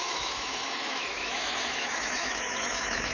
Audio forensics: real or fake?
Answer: fake